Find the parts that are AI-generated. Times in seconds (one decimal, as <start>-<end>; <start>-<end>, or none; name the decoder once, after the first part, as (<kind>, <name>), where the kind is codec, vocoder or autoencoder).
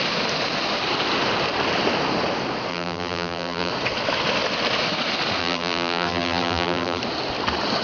2.7-3.7 (vocoder, BigVGAN v2); 5.4-7.0